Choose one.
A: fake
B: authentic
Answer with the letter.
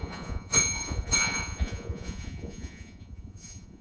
A